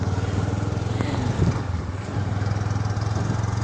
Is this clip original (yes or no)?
yes